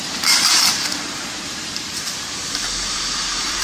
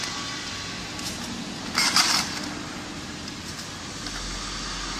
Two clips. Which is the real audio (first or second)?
second